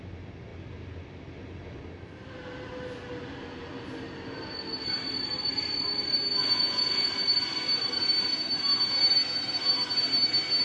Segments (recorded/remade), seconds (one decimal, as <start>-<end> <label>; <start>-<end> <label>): 0.0-6.4 recorded; 6.4-7.1 remade; 7.1-10.6 recorded